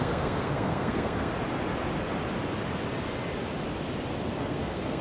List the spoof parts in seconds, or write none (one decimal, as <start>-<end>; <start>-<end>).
0.0-1.3; 4.3-5.0